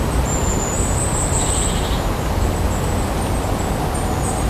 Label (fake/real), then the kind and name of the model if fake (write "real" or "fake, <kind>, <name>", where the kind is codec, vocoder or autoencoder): real